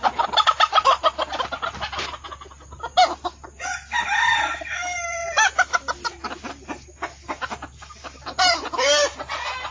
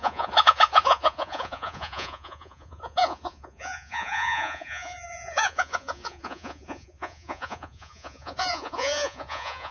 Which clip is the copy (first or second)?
second